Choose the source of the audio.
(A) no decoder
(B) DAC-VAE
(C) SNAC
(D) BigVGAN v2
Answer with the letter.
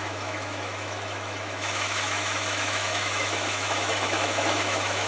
B